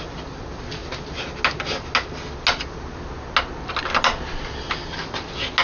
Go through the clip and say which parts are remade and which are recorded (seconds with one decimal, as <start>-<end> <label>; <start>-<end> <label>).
0.0-5.6 recorded